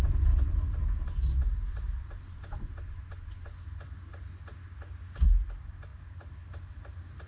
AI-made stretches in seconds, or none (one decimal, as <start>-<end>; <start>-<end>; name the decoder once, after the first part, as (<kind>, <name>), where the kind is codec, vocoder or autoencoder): none